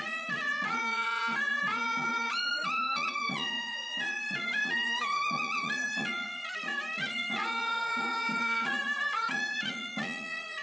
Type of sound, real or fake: fake